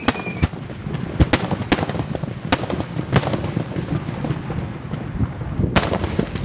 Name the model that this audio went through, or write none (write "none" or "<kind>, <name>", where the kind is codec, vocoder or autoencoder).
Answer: none